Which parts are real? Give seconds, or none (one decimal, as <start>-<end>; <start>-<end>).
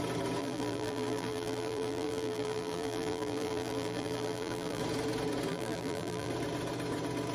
0.0-0.4; 4.8-5.5; 6.3-7.3